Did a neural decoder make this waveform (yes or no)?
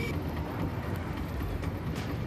yes